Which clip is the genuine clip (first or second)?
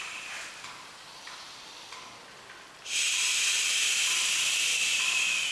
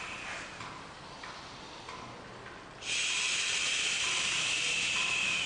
second